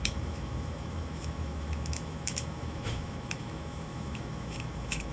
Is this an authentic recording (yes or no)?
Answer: no